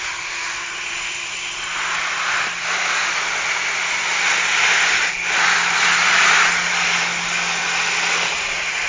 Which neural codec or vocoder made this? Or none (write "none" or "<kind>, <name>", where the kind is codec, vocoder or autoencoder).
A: none